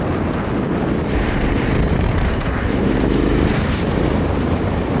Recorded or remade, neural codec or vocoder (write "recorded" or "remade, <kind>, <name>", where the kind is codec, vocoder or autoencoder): remade, vocoder, BigVGAN v2